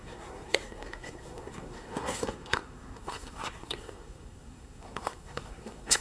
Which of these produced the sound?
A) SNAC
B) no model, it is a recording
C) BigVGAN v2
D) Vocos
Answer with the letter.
A